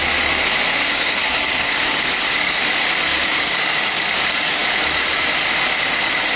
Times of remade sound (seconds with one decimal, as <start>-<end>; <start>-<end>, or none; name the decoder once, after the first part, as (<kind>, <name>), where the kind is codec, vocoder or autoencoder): 0.9-2.6 (codec, DAC); 3.3-4.6